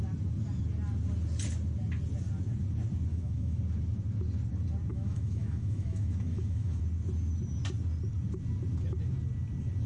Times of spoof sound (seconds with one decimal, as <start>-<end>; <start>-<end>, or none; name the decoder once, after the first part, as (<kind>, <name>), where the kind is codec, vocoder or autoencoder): 3.1-3.6 (autoencoder, DAC-VAE); 4.9-6.8